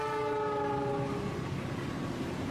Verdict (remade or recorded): recorded